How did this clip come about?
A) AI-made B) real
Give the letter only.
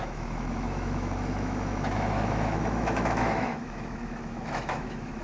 A